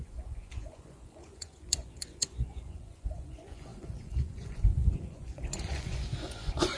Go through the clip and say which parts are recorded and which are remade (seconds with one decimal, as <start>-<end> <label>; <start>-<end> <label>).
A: 0.0-6.8 remade